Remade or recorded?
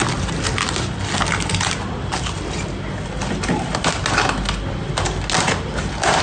recorded